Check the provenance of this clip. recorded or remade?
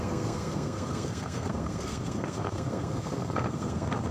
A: remade